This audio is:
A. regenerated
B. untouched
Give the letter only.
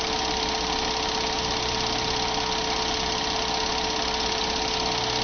B